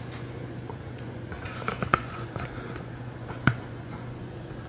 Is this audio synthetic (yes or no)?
yes